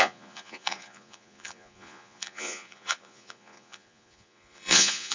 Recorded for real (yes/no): no